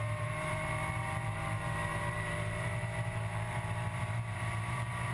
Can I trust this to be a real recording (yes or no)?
no